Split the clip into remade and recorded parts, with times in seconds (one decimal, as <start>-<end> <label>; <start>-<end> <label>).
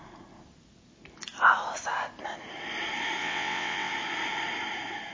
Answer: 0.0-3.2 recorded; 3.2-3.9 remade; 3.9-5.1 recorded